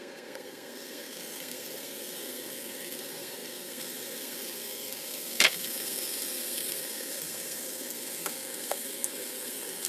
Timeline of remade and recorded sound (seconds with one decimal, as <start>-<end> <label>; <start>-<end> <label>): 0.0-9.9 remade